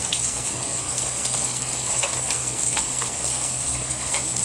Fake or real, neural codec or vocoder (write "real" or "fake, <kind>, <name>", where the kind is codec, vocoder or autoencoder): fake, codec, SNAC